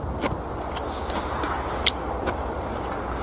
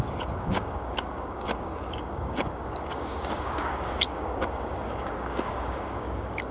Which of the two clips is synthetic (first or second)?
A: second